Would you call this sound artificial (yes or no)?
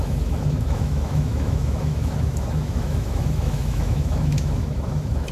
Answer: yes